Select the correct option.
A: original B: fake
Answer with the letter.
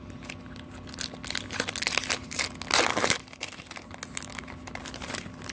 A